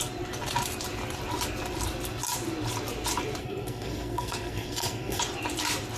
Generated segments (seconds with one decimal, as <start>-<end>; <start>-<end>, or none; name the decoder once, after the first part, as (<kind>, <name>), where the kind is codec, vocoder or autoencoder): 3.4-5.2 (codec, SNAC)